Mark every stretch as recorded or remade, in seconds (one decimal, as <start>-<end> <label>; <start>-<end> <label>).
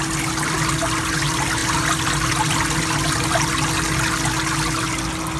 0.0-5.4 recorded